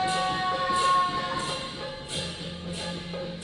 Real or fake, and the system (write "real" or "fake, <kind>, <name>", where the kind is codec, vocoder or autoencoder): real